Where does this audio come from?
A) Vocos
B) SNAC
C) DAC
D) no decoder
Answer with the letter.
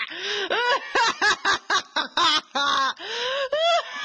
D